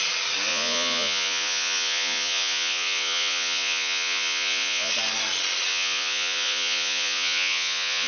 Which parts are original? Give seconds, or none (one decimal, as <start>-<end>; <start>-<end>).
0.0-0.5; 4.9-5.7